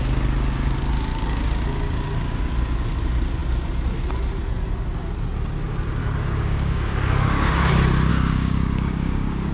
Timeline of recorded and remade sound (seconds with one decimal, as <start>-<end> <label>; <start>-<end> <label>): 0.0-1.1 recorded; 1.1-2.4 remade; 2.4-6.0 recorded; 6.0-7.7 remade; 7.7-8.1 recorded; 8.1-9.5 remade